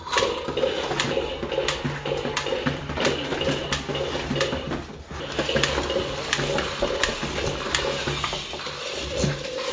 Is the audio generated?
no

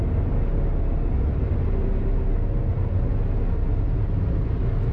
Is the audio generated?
no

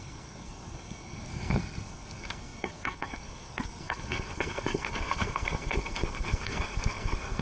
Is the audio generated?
yes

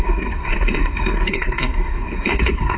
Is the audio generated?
yes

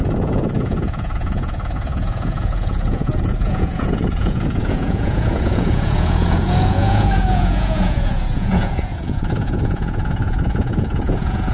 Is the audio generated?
yes